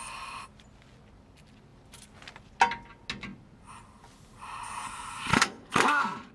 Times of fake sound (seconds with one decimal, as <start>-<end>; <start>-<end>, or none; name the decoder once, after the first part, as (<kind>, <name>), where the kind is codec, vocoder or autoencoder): 5.3-6.3 (codec, SNAC)